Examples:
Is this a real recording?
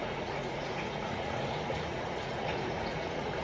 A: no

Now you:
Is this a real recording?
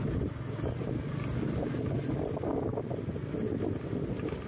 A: yes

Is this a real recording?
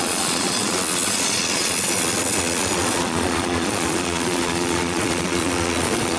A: no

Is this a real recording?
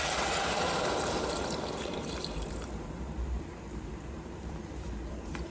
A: no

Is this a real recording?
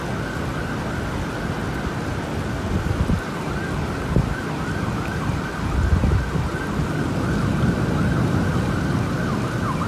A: yes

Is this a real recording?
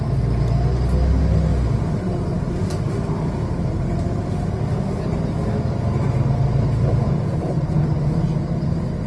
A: yes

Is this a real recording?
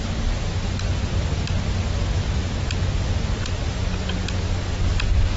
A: yes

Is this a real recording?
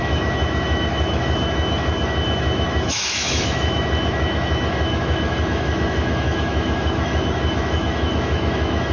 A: no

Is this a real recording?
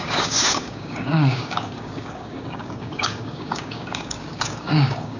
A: no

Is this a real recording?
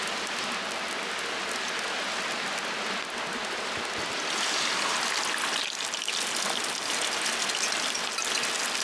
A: yes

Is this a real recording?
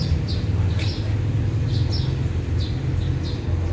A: yes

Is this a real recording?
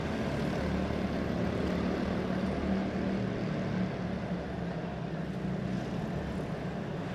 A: yes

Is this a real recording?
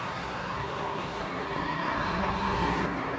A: no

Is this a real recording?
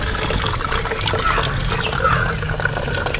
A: yes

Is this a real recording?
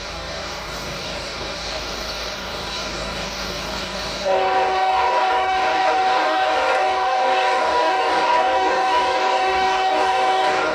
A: no